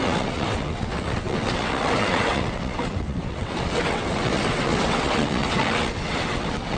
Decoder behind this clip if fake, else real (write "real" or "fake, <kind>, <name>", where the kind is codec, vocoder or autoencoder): fake, vocoder, WaveNeXt